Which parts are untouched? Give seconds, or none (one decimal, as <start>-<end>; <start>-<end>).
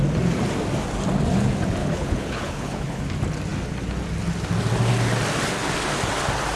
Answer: 0.0-1.8; 3.0-6.6